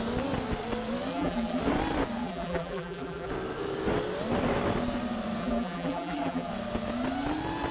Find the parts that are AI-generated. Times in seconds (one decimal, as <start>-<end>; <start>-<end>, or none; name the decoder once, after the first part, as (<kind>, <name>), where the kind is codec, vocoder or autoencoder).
1.1-1.6 (vocoder, BigVGAN v2); 2.2-3.3; 5.4-6.5